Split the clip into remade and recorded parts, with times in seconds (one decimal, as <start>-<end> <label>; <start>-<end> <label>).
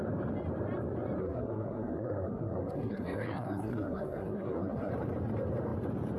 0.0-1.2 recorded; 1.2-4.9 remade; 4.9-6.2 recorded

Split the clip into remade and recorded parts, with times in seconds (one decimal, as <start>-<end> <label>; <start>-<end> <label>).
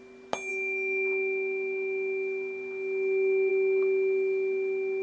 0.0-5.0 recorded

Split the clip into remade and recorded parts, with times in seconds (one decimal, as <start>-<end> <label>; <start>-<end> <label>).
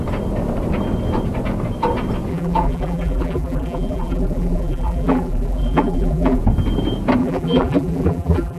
0.0-2.3 recorded; 2.3-6.4 remade; 6.4-7.2 recorded; 7.2-8.6 remade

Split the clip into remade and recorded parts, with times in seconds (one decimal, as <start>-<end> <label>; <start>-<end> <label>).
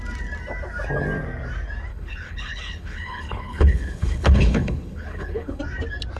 0.0-1.9 recorded; 1.9-5.6 remade; 5.6-6.2 recorded